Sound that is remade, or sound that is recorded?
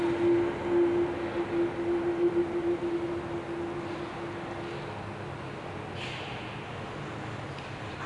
recorded